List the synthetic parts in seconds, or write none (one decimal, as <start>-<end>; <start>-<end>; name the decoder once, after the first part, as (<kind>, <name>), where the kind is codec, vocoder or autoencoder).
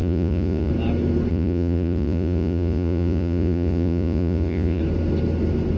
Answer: 0.0-0.7 (vocoder, Vocos); 1.3-4.8